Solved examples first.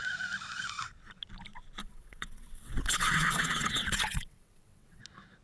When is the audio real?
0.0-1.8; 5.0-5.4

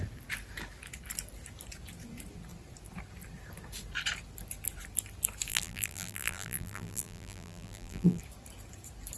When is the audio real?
0.0-5.5; 8.2-9.2

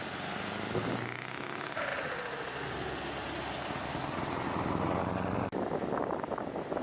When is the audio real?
0.0-6.8

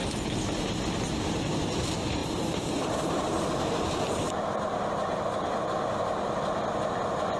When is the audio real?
0.0-2.2; 5.2-7.4

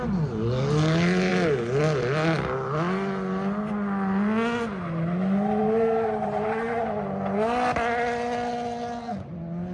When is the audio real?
0.0-5.6; 6.8-9.7